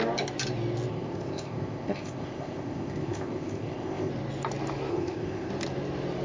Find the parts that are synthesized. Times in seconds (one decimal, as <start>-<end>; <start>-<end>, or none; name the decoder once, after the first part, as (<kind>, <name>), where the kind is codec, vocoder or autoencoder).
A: 0.9-4.1 (codec, ZipCodec); 4.9-5.5